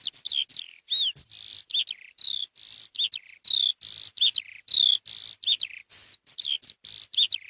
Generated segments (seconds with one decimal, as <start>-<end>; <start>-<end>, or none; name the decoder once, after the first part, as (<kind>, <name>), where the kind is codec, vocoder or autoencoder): none

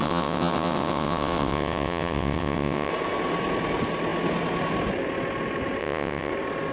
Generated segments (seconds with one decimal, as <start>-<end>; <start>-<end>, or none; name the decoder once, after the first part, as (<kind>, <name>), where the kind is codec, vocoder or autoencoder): 0.0-2.9 (vocoder, WaveNeXt); 5.8-6.3

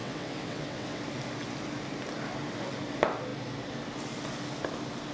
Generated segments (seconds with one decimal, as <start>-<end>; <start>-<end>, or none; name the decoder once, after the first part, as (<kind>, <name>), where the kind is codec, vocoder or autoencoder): 0.0-1.0 (vocoder, WaveNeXt)

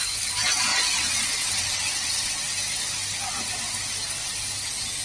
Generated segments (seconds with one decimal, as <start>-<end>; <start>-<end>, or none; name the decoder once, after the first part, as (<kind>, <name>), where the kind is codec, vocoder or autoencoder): 0.7-2.3 (vocoder, WaveNeXt)